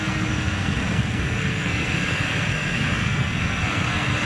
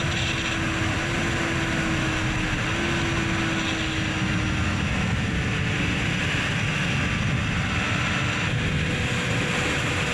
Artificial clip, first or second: first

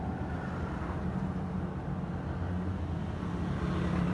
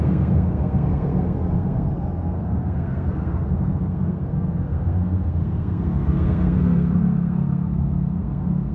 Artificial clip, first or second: second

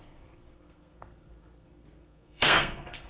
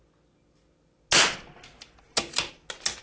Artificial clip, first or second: first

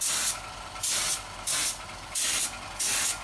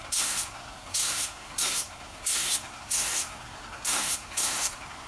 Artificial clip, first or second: second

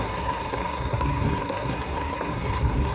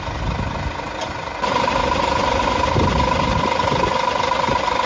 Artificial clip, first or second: first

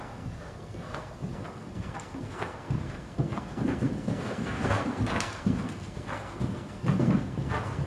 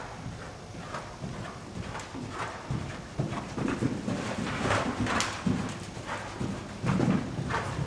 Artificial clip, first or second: first